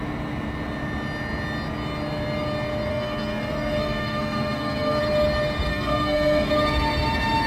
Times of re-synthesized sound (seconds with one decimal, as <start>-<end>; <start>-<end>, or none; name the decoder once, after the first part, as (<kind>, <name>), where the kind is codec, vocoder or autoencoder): 2.9-5.0 (codec, SNAC); 5.7-6.5